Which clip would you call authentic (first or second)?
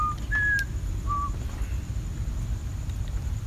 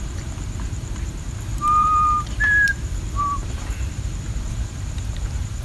first